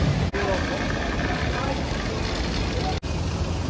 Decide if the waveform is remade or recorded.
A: recorded